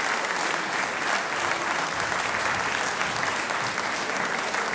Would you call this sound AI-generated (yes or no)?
no